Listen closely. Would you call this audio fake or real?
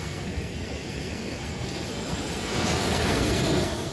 fake